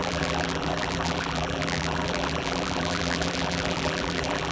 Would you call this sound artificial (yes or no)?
yes